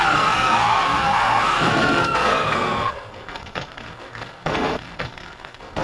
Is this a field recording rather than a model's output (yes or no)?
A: no